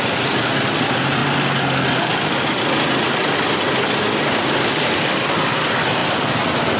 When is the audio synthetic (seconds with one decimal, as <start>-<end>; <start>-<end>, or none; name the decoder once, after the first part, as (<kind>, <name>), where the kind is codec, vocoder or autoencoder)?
0.0-1.2 (vocoder, BigVGAN v2); 4.6-6.8